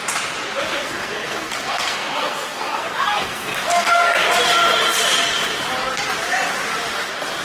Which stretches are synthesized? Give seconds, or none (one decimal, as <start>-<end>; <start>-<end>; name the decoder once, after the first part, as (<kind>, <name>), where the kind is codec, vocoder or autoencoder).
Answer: 0.7-4.3 (codec, SNAC)